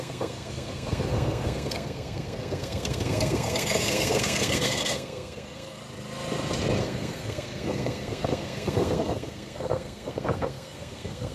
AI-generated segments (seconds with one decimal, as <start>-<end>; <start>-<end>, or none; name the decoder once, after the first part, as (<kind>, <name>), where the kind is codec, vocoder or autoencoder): 0.0-5.8 (codec, SNAC); 6.8-11.3